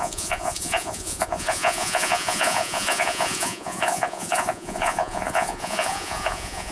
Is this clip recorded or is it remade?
remade